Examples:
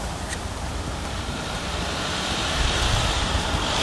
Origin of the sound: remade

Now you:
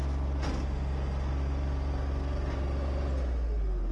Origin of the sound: recorded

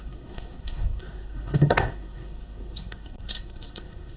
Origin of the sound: remade